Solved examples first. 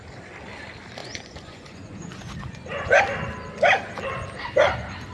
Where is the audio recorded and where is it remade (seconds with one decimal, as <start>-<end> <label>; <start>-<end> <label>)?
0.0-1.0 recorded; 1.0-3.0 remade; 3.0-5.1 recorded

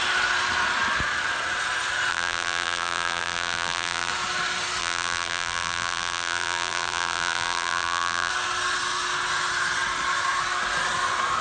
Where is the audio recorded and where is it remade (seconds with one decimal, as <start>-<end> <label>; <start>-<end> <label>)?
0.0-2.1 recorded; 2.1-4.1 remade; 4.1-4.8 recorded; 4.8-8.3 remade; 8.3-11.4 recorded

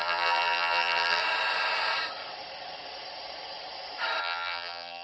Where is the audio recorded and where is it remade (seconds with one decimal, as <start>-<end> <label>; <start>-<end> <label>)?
0.0-1.2 remade; 1.2-4.2 recorded; 4.2-5.0 remade

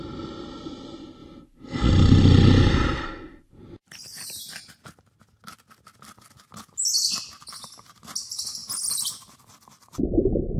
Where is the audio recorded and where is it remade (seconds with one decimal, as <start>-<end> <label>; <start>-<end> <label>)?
0.0-3.3 recorded; 3.3-4.4 remade; 4.4-8.6 recorded; 8.6-10.6 remade

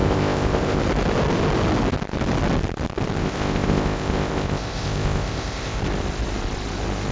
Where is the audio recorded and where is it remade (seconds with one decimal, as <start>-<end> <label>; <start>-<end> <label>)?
0.0-0.8 remade; 0.8-3.2 recorded; 3.2-5.8 remade; 5.8-7.1 recorded

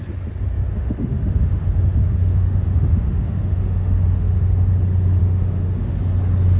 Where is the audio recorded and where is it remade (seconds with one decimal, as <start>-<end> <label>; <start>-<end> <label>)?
0.0-0.7 recorded; 0.7-4.7 remade; 4.7-5.2 recorded; 5.2-6.0 remade; 6.0-6.6 recorded